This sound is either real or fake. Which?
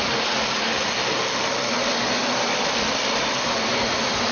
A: real